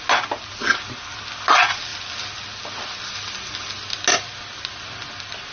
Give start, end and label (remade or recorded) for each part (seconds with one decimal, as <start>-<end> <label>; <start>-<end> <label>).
0.0-5.5 recorded